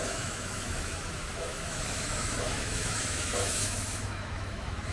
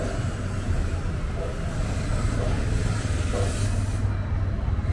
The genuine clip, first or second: second